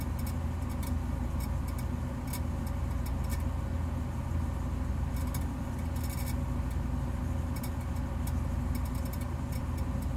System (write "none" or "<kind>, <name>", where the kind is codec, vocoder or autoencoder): none